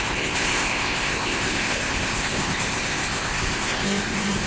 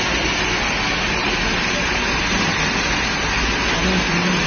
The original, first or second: second